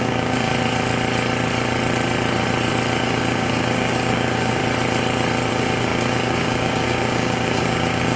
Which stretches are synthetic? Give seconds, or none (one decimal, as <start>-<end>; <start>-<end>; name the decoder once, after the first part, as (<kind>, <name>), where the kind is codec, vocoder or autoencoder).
0.0-0.5 (codec, DAC); 3.0-4.6; 5.5-8.2